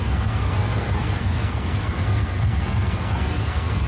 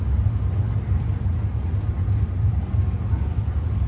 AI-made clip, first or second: first